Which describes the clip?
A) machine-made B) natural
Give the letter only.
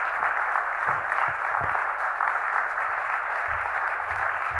B